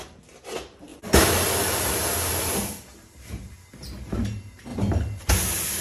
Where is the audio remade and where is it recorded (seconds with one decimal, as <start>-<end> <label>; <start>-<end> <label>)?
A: 0.0-0.9 recorded; 0.9-3.5 remade; 3.5-5.8 recorded